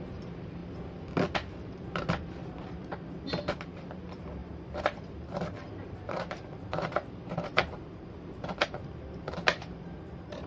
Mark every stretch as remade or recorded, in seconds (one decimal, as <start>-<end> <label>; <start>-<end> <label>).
0.0-0.6 remade; 0.6-2.5 recorded; 2.5-2.9 remade; 2.9-3.5 recorded; 3.5-10.5 remade